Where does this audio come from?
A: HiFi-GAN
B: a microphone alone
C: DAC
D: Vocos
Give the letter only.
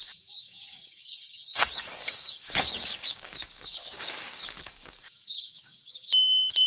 C